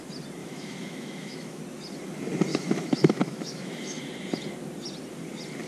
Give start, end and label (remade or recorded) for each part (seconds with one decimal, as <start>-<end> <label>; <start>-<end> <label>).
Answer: 0.0-0.4 recorded; 0.4-1.6 remade; 1.6-2.5 recorded; 2.5-4.0 remade; 4.0-5.7 recorded